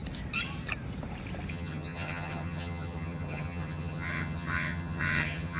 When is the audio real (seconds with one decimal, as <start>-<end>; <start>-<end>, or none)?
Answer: 0.0-1.5